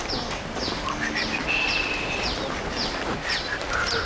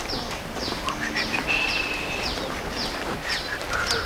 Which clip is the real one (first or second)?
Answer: first